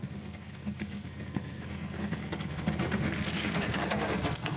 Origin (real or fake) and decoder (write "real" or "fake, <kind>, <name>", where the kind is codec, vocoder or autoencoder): fake, codec, SNAC